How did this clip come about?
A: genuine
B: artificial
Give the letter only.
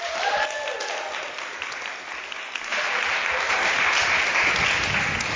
A